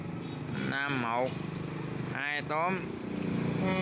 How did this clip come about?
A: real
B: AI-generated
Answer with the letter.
A